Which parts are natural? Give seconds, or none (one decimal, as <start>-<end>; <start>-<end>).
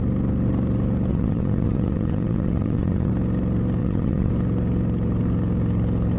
0.0-1.1; 3.1-3.8; 4.3-6.2